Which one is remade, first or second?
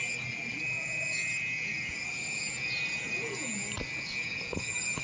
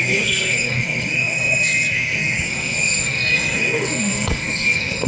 second